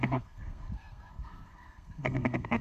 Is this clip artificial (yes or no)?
yes